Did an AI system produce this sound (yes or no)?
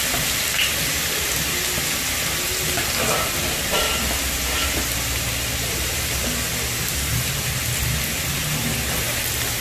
no